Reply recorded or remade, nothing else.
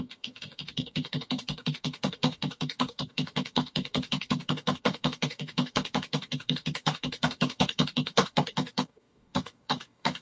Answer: remade